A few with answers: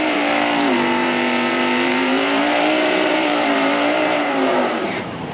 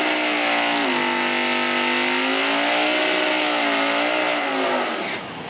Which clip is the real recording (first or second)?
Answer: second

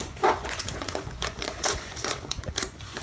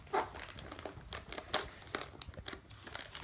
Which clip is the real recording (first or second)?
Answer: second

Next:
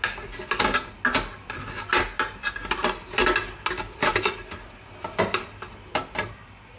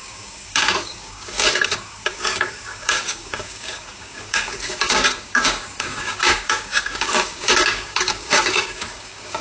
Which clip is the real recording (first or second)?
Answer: first